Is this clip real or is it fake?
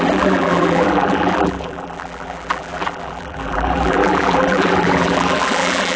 fake